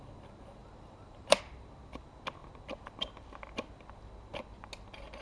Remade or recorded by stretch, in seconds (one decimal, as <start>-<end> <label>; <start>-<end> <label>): 0.0-0.6 recorded; 0.6-1.4 remade; 1.4-5.2 recorded